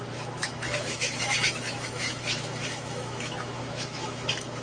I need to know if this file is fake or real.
fake